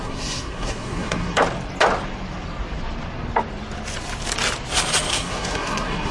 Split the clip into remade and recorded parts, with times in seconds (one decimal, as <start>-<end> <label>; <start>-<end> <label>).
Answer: 0.0-1.4 remade; 1.4-5.1 recorded; 5.1-6.1 remade